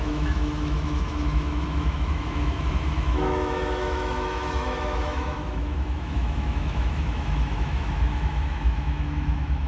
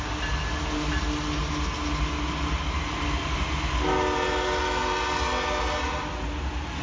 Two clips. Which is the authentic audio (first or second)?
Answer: second